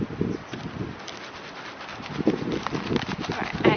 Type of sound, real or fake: real